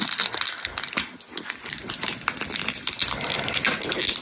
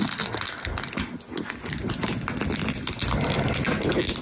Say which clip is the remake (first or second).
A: first